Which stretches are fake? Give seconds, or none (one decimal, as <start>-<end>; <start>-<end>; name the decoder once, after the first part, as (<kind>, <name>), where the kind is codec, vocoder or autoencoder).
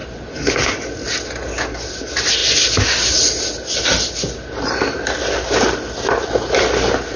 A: none